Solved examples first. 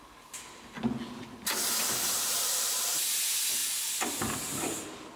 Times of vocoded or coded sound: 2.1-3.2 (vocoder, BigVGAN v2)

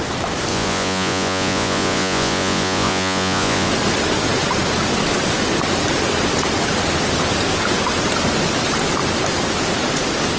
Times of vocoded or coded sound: 0.5-3.7 (vocoder, Vocos)

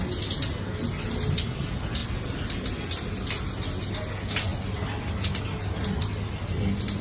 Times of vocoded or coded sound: none

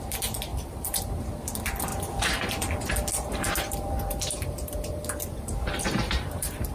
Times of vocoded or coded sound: 0.5-1.1 (vocoder, BigVGAN v2); 1.9-2.5; 3.1-6.7

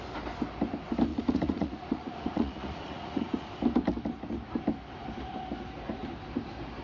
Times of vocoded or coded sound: 1.1-3.5 (vocoder, Vocos)